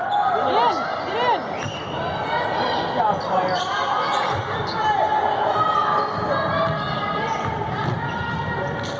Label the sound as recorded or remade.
recorded